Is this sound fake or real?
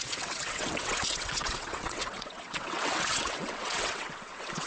fake